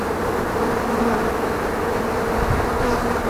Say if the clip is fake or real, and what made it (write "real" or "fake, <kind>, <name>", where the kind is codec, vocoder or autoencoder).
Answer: real